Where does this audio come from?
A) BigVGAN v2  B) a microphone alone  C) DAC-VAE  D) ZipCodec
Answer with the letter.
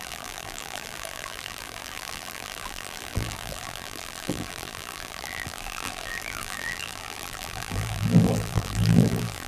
A